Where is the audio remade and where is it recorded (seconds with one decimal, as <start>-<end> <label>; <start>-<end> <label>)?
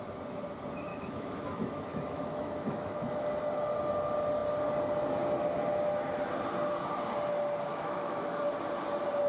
0.0-0.9 recorded; 0.9-3.4 remade; 3.4-7.7 recorded; 7.7-8.4 remade; 8.4-9.3 recorded